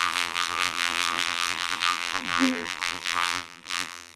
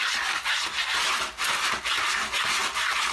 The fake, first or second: first